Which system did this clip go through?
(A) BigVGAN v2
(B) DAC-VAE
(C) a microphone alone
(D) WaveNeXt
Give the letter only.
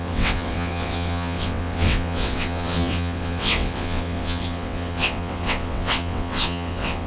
D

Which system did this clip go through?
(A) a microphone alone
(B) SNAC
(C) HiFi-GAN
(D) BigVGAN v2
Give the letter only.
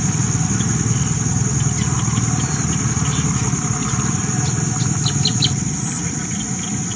A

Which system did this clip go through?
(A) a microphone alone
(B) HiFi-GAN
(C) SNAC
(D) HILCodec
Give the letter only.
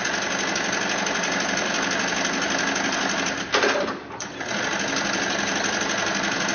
A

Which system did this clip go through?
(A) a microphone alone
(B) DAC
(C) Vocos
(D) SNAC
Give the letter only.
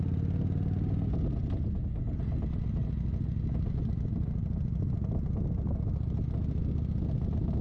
A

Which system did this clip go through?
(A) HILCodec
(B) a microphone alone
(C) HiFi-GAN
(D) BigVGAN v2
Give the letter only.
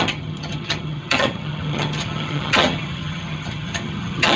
C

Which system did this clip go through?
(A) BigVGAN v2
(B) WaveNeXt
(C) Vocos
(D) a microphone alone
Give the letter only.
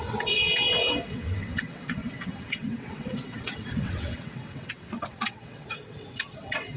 B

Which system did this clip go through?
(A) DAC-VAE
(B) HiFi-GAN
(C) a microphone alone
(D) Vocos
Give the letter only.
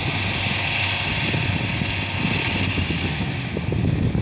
C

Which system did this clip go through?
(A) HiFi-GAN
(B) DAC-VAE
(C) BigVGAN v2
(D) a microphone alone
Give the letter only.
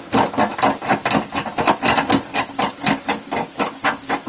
D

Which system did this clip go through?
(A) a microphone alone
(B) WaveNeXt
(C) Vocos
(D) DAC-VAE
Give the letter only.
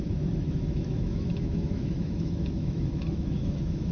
D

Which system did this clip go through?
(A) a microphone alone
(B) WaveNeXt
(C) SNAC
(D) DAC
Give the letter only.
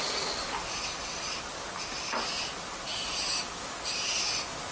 A